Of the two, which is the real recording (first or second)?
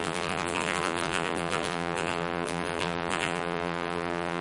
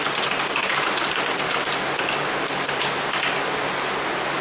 second